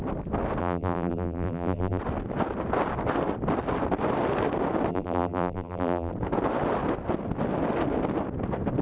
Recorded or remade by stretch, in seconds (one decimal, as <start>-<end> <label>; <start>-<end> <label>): 0.0-0.6 recorded; 0.6-2.0 remade; 2.0-4.9 recorded; 4.9-6.1 remade; 6.1-8.8 recorded